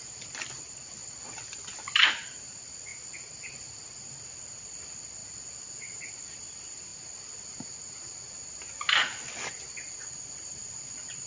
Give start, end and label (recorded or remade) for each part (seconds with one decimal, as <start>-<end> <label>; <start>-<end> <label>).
0.0-5.2 remade; 5.2-6.1 recorded; 6.1-6.9 remade; 6.9-10.0 recorded; 10.0-11.3 remade